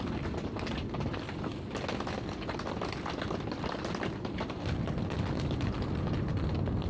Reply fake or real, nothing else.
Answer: real